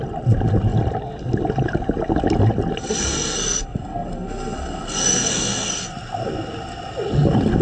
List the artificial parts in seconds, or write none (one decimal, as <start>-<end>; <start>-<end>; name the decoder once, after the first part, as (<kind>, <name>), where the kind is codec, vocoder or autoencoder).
2.8-5.8 (codec, SNAC)